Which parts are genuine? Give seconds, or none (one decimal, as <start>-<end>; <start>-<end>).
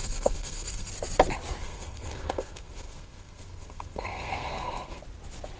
0.9-1.6; 5.0-5.6